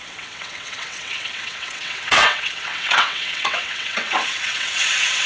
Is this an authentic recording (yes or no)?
no